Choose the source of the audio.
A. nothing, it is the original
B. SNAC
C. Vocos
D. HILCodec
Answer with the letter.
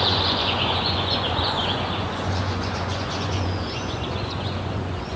C